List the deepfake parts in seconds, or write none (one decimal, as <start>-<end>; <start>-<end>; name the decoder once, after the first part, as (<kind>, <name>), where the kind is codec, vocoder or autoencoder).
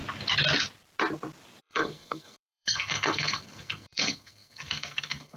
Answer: 1.6-5.4 (codec, SNAC)